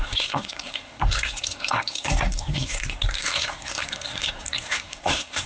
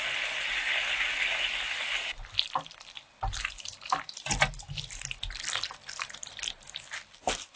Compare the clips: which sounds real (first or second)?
second